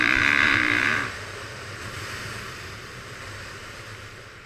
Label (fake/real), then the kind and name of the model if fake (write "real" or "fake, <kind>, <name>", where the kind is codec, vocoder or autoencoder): fake, vocoder, BigVGAN v2